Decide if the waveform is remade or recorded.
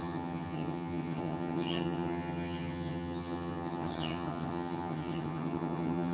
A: remade